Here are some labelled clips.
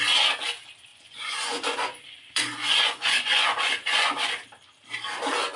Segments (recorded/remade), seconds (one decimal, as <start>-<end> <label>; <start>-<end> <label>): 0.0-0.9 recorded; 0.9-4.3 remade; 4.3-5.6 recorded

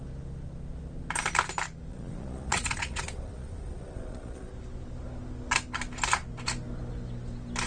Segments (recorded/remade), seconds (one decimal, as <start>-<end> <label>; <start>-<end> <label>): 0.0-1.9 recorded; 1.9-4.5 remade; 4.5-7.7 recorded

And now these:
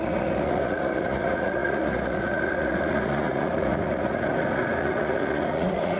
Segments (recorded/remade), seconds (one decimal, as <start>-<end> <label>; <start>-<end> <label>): 0.0-6.0 remade

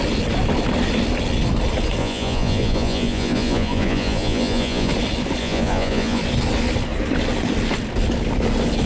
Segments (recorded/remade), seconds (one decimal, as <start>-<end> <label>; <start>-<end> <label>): 0.0-2.0 recorded; 2.0-4.9 remade; 4.9-5.4 recorded; 5.4-6.2 remade; 6.2-8.9 recorded